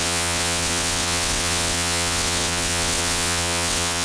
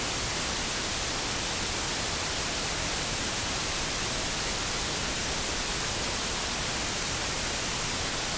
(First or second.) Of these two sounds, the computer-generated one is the first